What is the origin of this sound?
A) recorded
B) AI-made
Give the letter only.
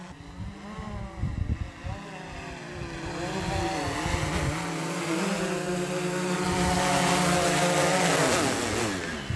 A